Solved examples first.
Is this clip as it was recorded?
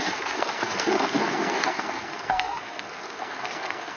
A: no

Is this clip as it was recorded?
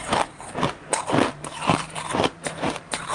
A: no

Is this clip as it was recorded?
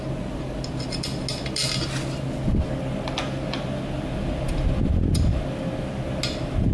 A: yes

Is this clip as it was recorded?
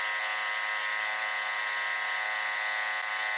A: yes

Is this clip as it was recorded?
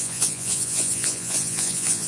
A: no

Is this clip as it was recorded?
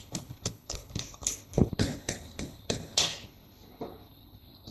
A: no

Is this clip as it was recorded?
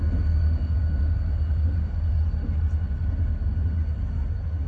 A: yes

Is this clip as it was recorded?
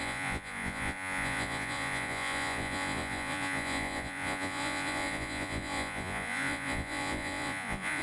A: no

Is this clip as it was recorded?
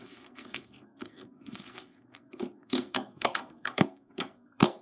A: no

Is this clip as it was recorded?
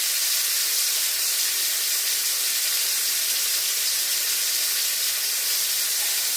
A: yes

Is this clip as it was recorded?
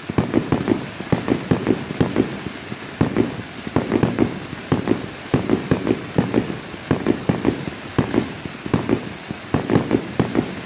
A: yes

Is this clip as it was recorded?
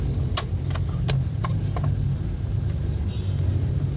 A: yes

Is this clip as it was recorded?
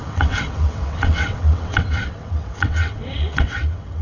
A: no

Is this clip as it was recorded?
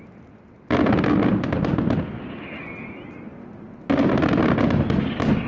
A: yes